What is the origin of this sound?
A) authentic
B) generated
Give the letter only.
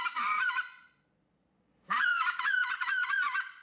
B